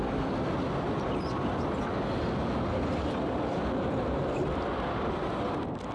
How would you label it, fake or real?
real